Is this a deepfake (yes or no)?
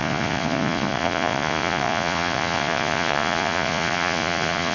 yes